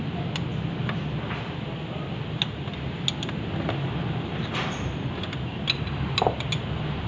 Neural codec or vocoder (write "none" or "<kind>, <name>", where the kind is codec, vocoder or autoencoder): none